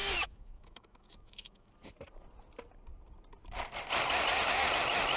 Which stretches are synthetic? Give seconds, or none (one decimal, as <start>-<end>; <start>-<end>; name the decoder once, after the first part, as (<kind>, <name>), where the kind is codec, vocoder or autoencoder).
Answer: 0.0-1.7 (autoencoder, DAC-VAE)